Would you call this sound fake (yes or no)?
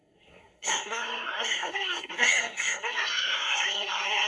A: yes